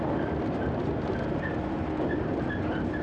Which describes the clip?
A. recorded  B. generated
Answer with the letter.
B